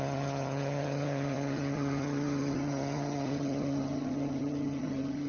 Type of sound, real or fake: fake